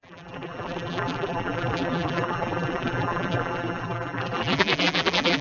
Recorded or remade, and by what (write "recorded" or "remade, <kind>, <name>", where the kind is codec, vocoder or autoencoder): remade, vocoder, BigVGAN v2